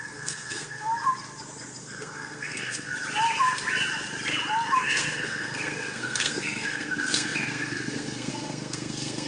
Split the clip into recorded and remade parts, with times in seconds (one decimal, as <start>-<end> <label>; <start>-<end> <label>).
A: 0.0-0.9 remade; 0.9-1.8 recorded; 1.8-2.9 remade; 2.9-4.8 recorded; 4.8-9.3 remade